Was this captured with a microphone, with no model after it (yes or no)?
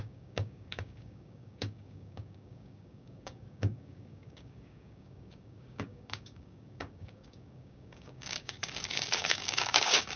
no